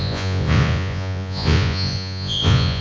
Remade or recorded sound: remade